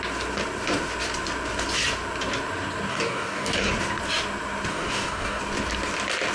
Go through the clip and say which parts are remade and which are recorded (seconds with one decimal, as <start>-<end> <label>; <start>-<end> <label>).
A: 0.0-2.9 recorded; 2.9-3.7 remade; 3.7-4.7 recorded; 4.7-5.4 remade; 5.4-6.3 recorded